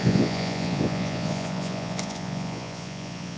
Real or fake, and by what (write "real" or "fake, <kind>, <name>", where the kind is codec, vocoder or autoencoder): fake, vocoder, Vocos